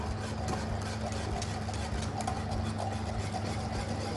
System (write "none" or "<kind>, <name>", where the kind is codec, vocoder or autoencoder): none